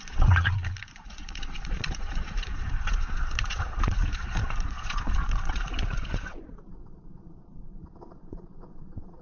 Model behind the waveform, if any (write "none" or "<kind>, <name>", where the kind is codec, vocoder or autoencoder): vocoder, Vocos